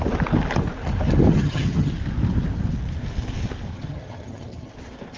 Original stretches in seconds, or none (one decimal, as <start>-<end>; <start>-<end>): 0.0-1.3; 1.9-3.7; 4.7-5.2